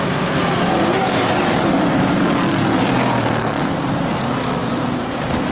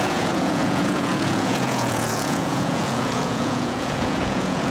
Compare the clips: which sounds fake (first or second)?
second